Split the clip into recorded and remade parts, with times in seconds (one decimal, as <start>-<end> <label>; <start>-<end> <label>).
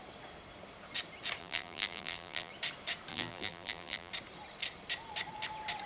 0.0-1.4 recorded; 1.4-2.5 remade; 2.5-3.1 recorded; 3.1-4.1 remade; 4.1-5.9 recorded